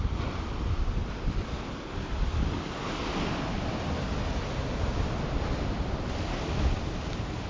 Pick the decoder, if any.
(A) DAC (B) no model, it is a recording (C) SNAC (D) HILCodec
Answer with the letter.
B